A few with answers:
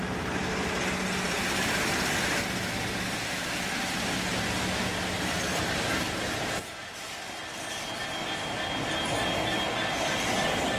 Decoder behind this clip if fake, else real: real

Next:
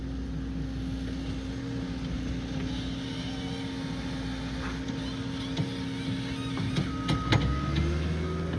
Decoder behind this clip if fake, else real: real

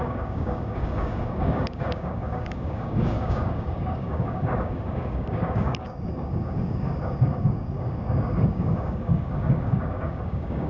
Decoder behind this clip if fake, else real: fake, codec, DAC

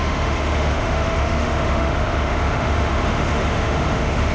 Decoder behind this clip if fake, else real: fake, autoencoder, DAC-VAE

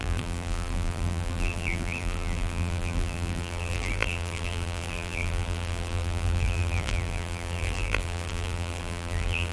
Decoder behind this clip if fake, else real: fake, vocoder, BigVGAN v2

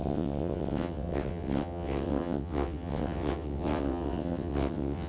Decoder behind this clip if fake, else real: fake, vocoder, WaveNeXt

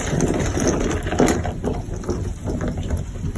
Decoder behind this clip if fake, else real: real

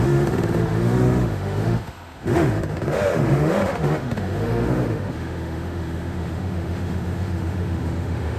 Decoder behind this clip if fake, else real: fake, autoencoder, DAC-VAE